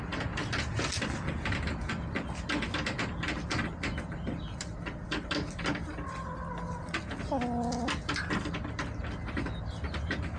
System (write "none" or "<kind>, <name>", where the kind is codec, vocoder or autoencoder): none